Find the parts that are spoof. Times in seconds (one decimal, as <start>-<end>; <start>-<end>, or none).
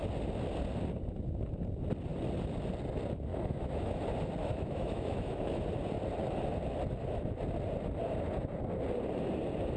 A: 3.3-4.0; 4.4-5.6